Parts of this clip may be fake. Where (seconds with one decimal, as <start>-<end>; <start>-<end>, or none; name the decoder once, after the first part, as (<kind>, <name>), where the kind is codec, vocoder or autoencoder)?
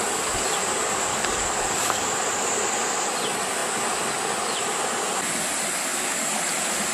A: 1.1-2.3 (codec, DAC); 5.8-6.4